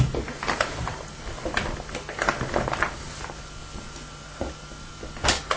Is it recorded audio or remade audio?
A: recorded